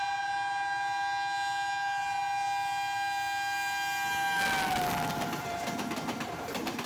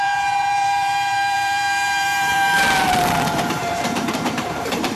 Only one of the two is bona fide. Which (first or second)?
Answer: first